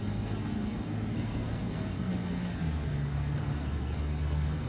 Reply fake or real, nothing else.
fake